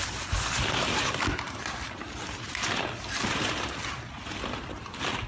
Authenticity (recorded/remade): recorded